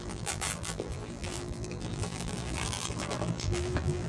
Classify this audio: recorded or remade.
remade